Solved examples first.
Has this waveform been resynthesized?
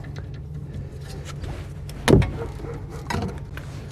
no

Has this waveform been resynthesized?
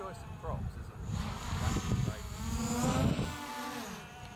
no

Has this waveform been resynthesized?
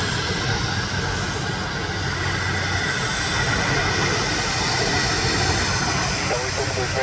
no